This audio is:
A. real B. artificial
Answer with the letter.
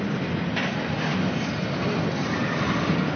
A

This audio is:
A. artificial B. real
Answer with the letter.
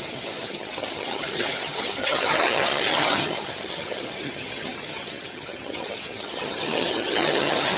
A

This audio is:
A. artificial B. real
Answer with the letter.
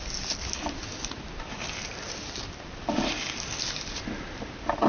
B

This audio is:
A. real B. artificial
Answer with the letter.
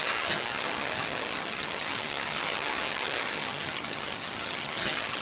B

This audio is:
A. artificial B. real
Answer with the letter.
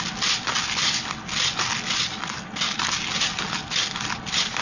B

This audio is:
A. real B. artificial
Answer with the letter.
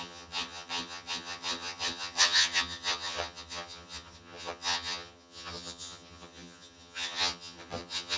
B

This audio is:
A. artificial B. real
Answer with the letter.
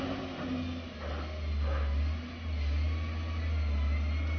B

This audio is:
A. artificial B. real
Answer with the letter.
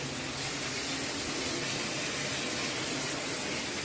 B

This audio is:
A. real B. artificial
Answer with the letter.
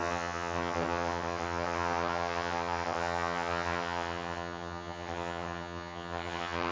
B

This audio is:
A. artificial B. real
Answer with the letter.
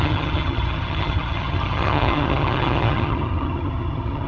A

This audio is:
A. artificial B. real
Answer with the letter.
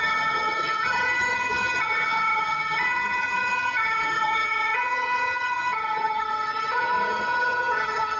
A